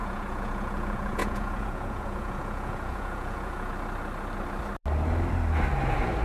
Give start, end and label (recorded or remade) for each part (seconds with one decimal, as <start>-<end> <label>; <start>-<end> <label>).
0.0-3.7 remade; 3.7-6.2 recorded